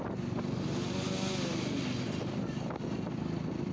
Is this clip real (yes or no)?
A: yes